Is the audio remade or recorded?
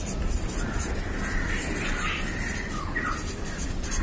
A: recorded